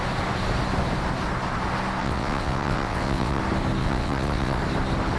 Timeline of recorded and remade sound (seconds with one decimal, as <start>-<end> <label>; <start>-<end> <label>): 0.0-2.0 recorded; 2.0-3.4 remade; 3.4-3.8 recorded; 3.8-4.6 remade; 4.6-5.2 recorded